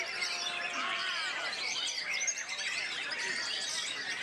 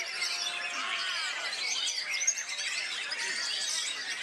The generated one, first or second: first